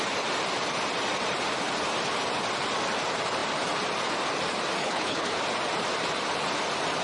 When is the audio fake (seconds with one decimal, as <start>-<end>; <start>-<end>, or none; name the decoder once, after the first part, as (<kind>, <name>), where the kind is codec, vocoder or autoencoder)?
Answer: 4.8-5.4 (codec, HILCodec)